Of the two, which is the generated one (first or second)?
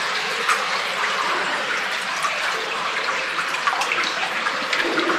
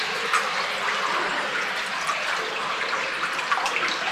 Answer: first